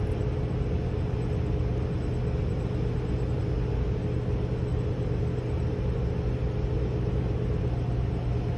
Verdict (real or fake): real